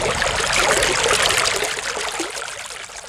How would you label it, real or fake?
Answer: real